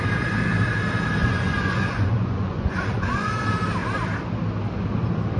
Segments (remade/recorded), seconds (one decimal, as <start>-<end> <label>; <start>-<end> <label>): 0.0-1.2 recorded; 1.2-3.3 remade; 3.3-5.4 recorded